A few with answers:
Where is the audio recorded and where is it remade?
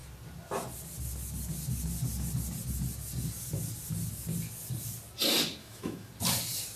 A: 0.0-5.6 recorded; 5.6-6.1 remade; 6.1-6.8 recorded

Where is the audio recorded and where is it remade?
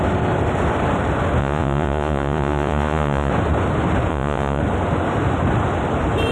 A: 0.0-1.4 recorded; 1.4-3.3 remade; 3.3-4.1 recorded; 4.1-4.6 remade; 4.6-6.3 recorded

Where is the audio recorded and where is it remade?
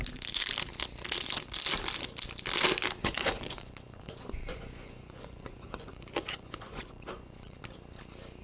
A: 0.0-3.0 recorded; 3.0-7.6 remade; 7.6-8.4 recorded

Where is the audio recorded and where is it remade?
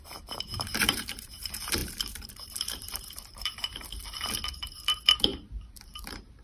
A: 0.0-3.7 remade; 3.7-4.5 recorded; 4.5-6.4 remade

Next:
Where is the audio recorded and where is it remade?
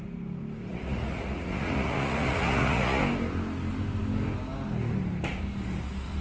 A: 0.0-0.7 recorded; 0.7-3.0 remade; 3.0-6.2 recorded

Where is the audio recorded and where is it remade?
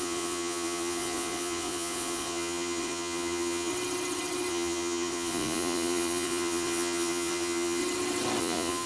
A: 0.0-3.7 remade; 3.7-4.5 recorded; 4.5-7.8 remade; 7.8-8.4 recorded; 8.4-8.9 remade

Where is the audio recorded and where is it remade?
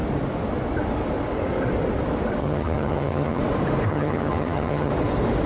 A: 0.0-2.4 recorded; 2.4-3.4 remade; 3.4-3.9 recorded; 3.9-4.9 remade; 4.9-5.5 recorded